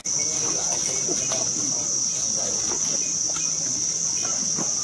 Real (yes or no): yes